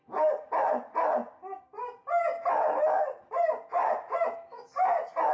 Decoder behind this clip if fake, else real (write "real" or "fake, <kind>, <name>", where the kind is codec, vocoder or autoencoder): real